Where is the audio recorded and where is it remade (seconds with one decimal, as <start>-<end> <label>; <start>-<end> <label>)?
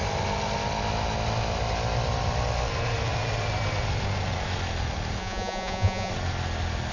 0.0-5.2 recorded; 5.2-6.1 remade; 6.1-6.9 recorded